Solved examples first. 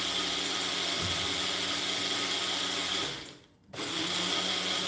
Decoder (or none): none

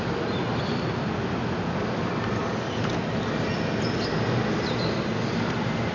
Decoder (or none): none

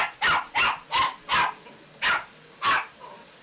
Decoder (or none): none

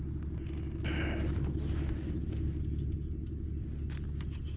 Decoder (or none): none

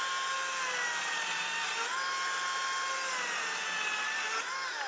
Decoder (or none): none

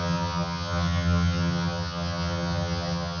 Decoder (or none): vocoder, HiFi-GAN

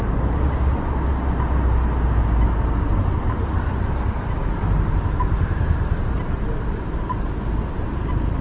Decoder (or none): none